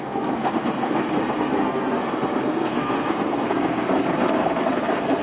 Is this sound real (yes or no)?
no